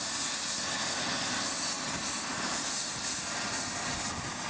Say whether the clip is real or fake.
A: real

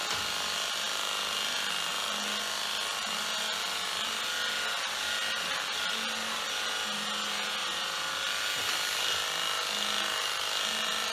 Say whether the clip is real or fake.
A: real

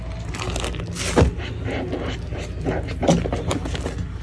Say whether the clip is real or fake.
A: real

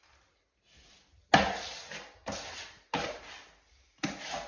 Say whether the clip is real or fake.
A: real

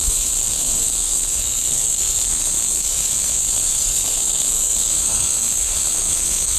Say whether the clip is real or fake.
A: fake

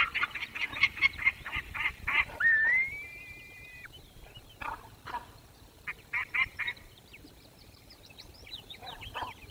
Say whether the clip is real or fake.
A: fake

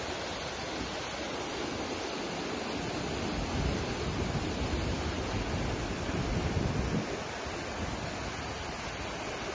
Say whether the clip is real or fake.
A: real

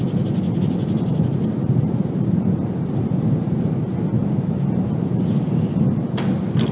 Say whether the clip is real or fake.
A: real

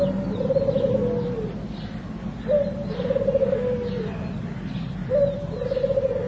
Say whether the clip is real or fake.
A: real